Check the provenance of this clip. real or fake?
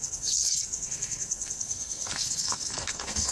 fake